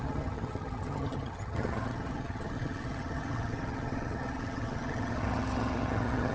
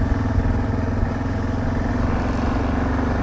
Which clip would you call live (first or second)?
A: second